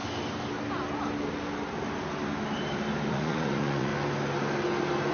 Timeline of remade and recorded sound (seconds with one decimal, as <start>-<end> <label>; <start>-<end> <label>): 0.0-3.1 recorded; 3.1-3.9 remade; 3.9-5.1 recorded